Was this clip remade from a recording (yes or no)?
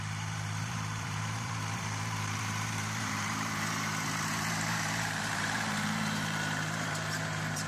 yes